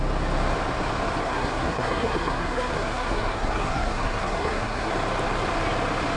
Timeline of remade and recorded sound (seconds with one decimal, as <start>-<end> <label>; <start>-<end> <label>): 0.0-1.2 recorded; 1.2-4.9 remade; 4.9-6.2 recorded